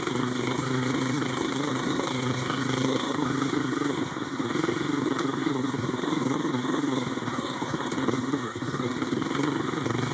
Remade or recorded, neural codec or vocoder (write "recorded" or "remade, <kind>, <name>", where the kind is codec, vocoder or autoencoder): remade, codec, SNAC